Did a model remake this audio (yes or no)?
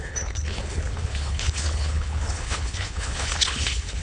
yes